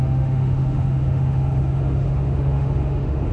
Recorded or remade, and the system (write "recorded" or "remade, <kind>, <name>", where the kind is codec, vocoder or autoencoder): remade, autoencoder, DAC-VAE